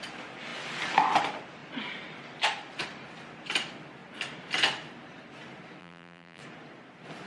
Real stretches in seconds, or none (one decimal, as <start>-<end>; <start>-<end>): 0.0-5.8; 6.4-7.3